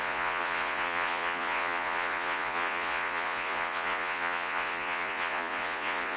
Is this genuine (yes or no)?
no